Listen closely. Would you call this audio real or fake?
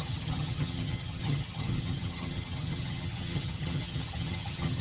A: fake